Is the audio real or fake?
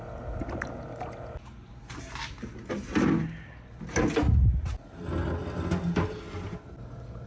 real